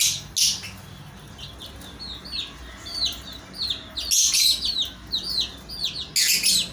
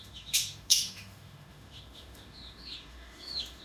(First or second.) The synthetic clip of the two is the second